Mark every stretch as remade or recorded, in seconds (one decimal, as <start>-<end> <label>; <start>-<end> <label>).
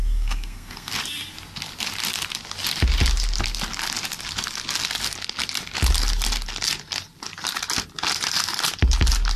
0.0-0.9 remade; 0.9-9.4 recorded